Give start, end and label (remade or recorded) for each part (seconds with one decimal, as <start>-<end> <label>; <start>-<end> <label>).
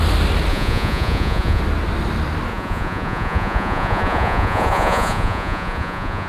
0.0-0.5 recorded; 0.5-1.6 remade; 1.6-2.5 recorded; 2.5-6.3 remade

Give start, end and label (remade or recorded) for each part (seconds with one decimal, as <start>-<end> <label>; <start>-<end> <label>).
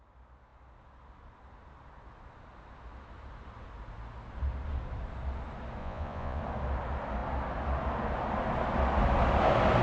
0.0-5.8 recorded; 5.8-6.4 remade; 6.4-9.8 recorded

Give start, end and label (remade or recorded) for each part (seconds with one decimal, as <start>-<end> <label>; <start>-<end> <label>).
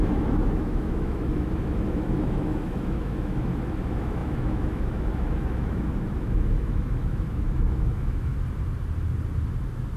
0.0-8.3 remade; 8.3-10.0 recorded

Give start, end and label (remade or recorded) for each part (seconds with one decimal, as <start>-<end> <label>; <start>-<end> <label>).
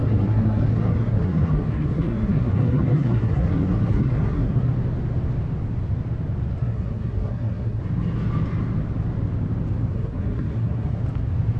0.0-4.7 remade; 4.7-6.6 recorded; 6.6-7.8 remade; 7.8-9.9 recorded; 9.9-11.0 remade; 11.0-11.6 recorded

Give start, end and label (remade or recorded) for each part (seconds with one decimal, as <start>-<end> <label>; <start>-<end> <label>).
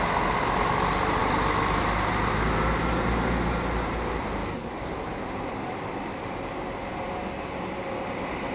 0.0-4.4 recorded; 4.4-4.9 remade; 4.9-8.5 recorded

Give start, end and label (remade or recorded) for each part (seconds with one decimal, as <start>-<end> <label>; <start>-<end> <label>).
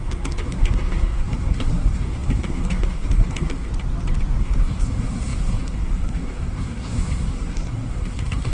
0.0-3.7 remade; 3.7-4.4 recorded; 4.4-8.5 remade